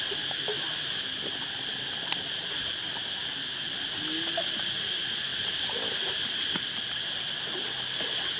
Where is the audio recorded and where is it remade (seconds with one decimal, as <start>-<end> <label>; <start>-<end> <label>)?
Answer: 0.0-8.4 recorded